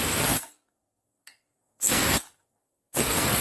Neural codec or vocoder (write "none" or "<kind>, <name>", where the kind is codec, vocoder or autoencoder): codec, SNAC